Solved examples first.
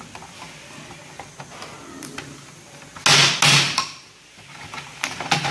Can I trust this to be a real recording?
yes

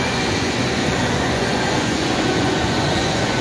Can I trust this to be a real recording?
no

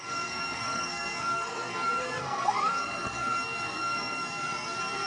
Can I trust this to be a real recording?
no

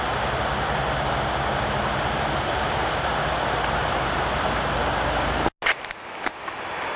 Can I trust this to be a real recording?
yes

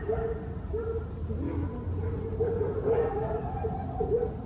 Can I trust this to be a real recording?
yes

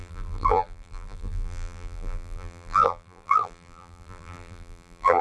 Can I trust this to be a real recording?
no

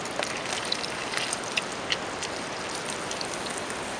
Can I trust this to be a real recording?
yes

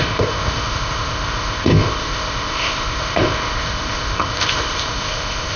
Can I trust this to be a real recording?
no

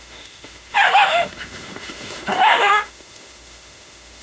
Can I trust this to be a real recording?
no